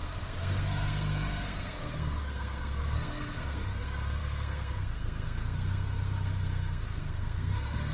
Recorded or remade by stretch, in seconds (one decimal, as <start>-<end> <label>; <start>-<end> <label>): 0.0-7.9 remade